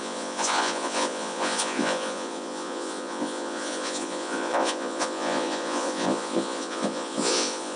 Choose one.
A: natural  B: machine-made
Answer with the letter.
B